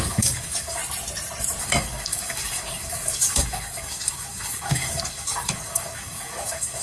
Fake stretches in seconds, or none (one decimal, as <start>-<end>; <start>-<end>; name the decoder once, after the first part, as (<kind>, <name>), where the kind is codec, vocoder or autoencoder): 0.0-0.8 (codec, DAC); 1.6-6.8